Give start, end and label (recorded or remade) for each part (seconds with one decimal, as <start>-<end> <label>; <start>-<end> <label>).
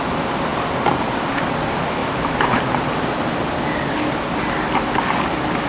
0.0-2.0 recorded; 2.0-2.6 remade; 2.6-5.7 recorded